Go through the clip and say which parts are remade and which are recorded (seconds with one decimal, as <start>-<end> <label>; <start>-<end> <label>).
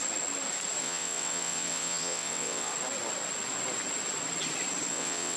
0.0-0.8 recorded; 0.8-2.7 remade; 2.7-4.9 recorded; 4.9-5.4 remade